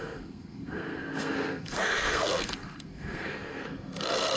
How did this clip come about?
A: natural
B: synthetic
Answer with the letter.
B